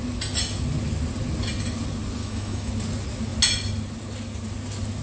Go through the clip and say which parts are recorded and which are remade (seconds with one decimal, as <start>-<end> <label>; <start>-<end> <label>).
0.0-2.2 recorded; 2.2-2.7 remade; 2.7-5.0 recorded